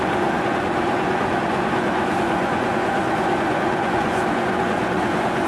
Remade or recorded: remade